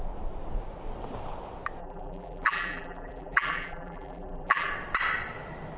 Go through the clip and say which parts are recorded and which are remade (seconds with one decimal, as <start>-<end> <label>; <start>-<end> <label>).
0.0-1.8 recorded; 1.8-4.7 remade; 4.7-5.8 recorded